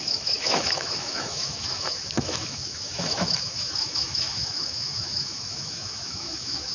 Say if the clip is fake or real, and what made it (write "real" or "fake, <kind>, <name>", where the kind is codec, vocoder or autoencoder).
fake, autoencoder, DAC-VAE